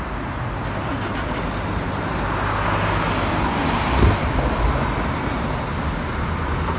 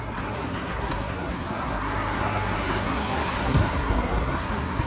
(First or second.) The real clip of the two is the first